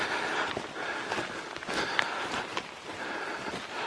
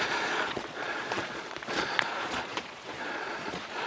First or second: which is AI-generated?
second